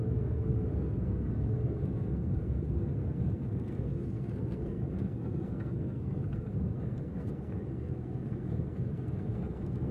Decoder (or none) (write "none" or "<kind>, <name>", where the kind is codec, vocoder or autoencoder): codec, SNAC